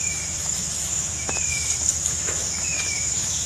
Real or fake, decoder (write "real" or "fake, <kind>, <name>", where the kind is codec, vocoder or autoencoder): fake, autoencoder, DAC-VAE